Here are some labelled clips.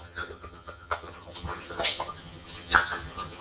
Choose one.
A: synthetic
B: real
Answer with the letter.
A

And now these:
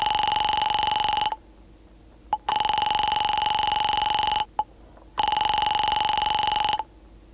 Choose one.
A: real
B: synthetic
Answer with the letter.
A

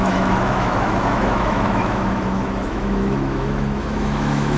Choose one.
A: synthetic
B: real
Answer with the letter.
A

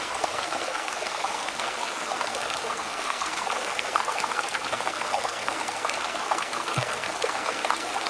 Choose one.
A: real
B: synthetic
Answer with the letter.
B